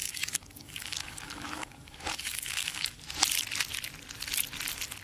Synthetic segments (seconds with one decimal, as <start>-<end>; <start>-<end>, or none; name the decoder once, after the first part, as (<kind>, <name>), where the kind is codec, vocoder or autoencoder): 0.0-3.0 (codec, DAC)